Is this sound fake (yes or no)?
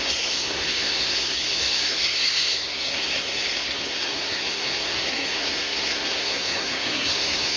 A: yes